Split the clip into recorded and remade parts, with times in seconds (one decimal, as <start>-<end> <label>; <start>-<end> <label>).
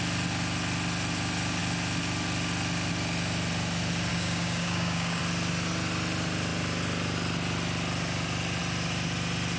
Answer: 0.0-4.1 recorded; 4.1-5.2 remade; 5.2-9.6 recorded